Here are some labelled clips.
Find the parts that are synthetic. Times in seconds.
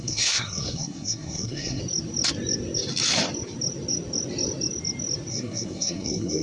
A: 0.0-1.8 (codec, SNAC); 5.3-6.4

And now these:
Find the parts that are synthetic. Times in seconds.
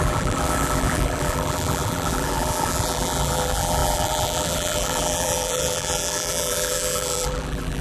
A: 0.0-7.8 (vocoder, BigVGAN v2)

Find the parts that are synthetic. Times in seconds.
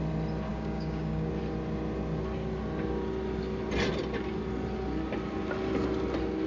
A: 0.5-1.3 (codec, DAC)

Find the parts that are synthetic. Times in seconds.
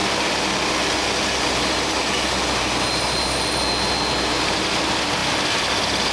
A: none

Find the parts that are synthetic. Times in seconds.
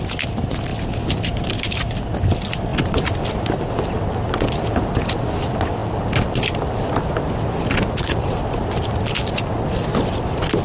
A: none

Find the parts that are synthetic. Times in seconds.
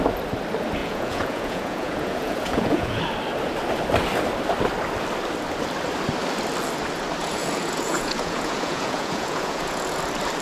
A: 0.8-3.0 (vocoder, Vocos); 7.2-10.0